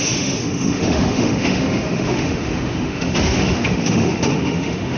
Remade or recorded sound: remade